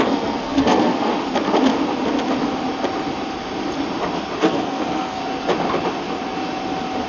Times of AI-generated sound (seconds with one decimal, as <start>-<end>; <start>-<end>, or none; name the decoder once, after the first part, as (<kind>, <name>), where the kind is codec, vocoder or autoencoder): 0.0-1.1 (codec, SNAC); 4.4-5.2

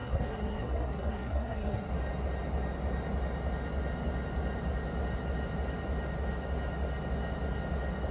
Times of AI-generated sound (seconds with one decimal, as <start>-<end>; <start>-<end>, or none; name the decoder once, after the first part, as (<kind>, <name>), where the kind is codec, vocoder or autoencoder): 0.0-1.9 (codec, SNAC)

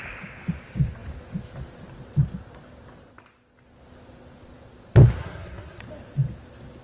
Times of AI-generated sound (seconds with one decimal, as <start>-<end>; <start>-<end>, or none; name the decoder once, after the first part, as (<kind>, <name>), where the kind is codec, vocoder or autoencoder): 5.2-5.8 (codec, SNAC)

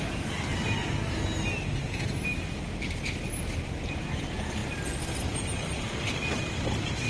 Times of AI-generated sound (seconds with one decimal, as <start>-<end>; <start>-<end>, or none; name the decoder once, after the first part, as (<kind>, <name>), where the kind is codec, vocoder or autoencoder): none

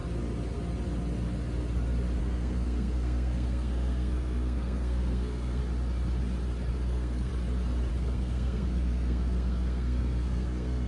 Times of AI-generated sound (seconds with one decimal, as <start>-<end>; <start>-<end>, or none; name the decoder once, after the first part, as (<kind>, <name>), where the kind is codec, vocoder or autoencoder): 2.2-5.6 (codec, SNAC); 6.7-7.3; 7.9-10.9

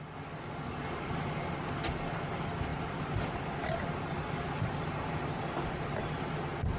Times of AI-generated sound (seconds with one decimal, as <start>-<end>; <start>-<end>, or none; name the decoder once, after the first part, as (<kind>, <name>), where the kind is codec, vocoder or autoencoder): none